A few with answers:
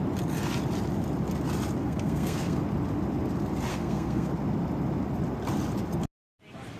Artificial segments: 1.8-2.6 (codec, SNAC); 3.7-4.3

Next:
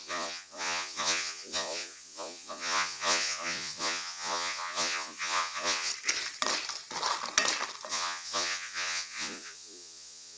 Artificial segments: 0.0-5.9 (vocoder, Vocos); 7.9-10.4

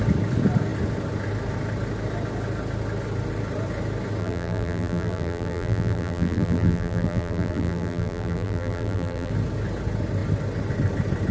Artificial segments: 4.2-9.3 (vocoder, BigVGAN v2)

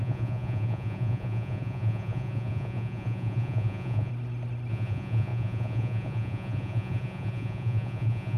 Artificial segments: 0.0-4.1 (vocoder, Vocos); 4.7-8.4